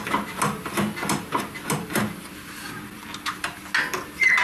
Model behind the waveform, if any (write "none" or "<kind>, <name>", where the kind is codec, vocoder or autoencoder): none